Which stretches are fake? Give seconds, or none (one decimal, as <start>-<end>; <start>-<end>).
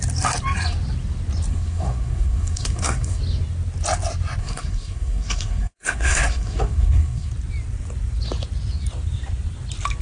1.5-3.2; 4.4-7.3